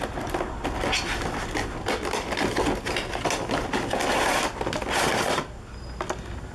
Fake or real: real